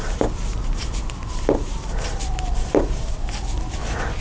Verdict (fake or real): fake